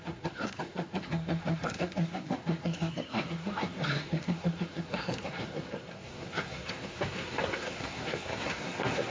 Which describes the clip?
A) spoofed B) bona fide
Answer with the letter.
A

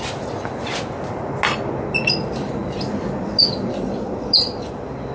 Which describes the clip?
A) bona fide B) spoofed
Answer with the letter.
A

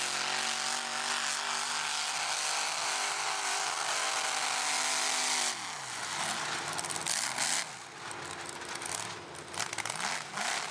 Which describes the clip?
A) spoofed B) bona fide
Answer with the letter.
B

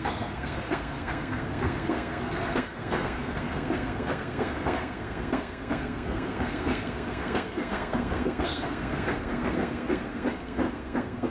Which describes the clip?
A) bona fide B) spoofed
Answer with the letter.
B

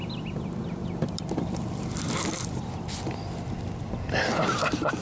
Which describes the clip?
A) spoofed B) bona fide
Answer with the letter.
A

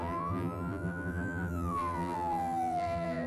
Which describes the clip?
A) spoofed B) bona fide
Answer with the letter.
A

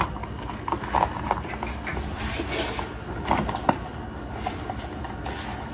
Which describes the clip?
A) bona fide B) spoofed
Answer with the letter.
A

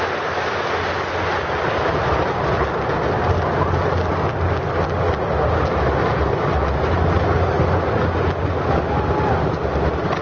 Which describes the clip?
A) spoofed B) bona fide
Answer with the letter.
B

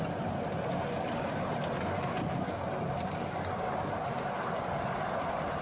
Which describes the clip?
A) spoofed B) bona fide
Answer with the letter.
B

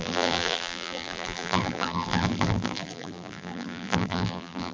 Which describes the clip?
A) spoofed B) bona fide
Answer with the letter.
A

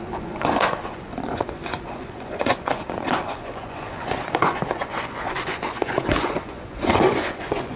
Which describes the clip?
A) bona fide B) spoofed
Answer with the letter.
B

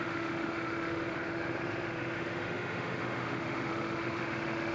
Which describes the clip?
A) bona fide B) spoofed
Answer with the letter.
B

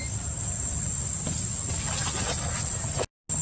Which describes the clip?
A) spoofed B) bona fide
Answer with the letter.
B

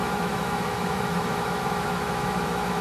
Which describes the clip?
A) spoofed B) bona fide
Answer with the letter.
A